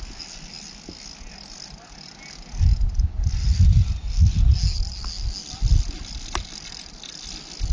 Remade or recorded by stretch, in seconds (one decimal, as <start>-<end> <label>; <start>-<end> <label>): 0.0-7.7 recorded